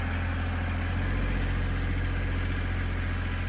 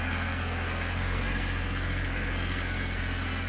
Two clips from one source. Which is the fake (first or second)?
second